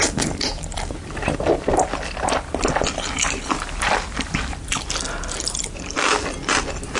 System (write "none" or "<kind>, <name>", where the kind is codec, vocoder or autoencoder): none